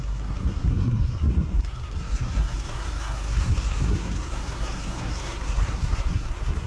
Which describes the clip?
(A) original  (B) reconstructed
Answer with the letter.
B